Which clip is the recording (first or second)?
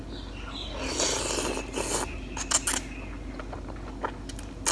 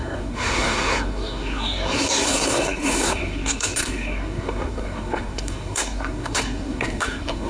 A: first